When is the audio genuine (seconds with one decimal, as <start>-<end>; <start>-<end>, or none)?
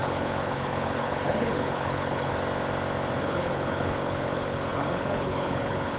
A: 2.3-3.2